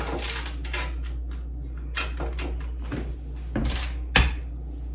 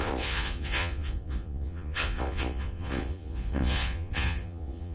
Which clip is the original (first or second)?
first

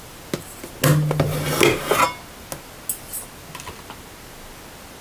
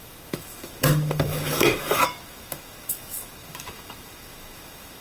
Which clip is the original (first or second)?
first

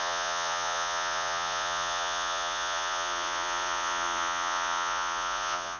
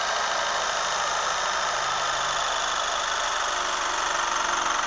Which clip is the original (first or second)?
second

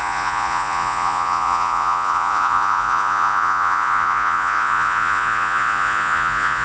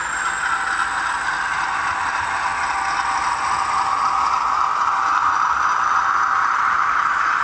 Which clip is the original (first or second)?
second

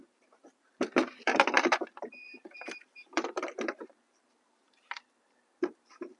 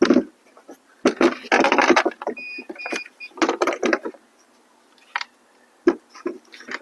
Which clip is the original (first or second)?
second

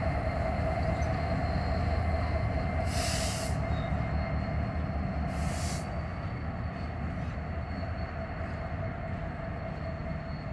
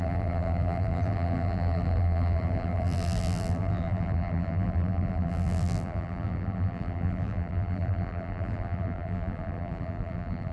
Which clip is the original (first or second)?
first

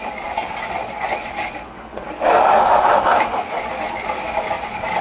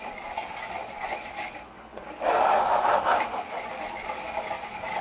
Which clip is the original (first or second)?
first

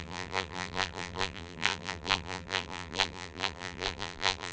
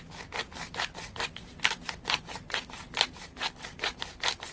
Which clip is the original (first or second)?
second